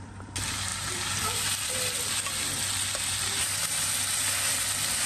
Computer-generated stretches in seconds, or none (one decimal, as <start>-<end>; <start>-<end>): none